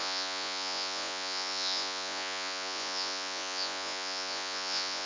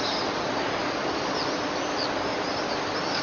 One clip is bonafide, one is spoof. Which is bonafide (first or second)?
second